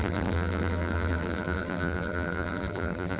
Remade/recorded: remade